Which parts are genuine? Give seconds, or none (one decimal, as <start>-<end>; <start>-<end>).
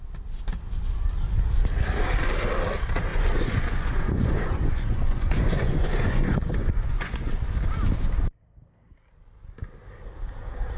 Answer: 0.0-3.1; 7.3-10.8